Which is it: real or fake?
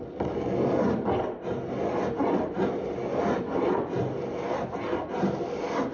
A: real